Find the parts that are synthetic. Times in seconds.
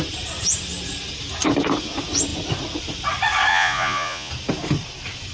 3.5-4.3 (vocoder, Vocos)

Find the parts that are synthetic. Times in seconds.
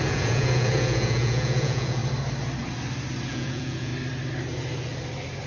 0.0-2.0 (vocoder, Vocos); 3.3-3.9